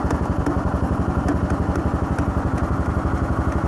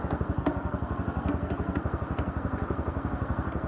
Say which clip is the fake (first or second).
second